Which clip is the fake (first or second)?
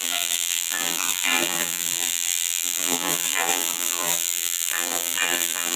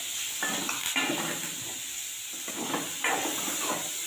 first